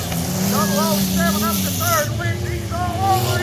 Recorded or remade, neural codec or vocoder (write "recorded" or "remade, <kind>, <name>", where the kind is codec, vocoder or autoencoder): recorded